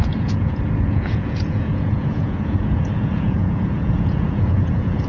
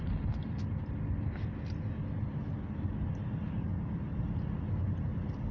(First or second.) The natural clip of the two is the second